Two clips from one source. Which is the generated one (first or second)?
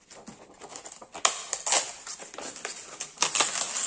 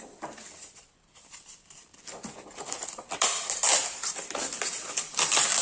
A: second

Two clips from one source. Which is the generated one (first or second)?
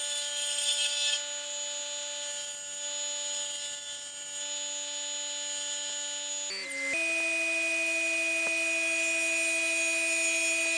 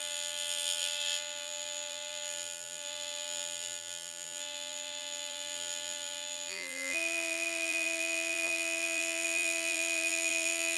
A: second